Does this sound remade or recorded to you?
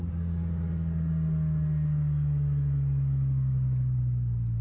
recorded